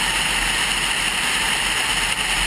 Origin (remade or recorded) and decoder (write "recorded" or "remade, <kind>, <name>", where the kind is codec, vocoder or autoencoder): recorded